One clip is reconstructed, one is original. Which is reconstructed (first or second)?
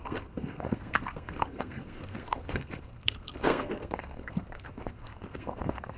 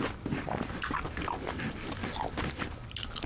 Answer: first